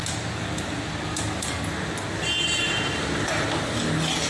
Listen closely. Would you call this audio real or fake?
real